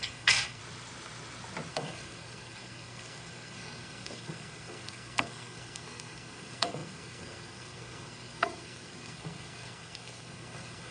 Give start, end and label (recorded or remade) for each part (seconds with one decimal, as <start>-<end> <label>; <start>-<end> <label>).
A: 0.0-0.6 remade; 0.6-1.7 recorded; 1.7-10.9 remade